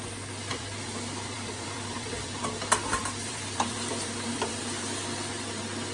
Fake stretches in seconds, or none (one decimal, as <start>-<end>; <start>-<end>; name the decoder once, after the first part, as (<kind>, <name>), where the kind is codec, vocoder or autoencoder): 0.5-2.4 (vocoder, BigVGAN v2); 2.9-4.6